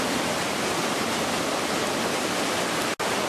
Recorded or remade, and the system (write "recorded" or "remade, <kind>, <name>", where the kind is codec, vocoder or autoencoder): recorded